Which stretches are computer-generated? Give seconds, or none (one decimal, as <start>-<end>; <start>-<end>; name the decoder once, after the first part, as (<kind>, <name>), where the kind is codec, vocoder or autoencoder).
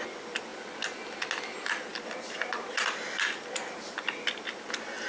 none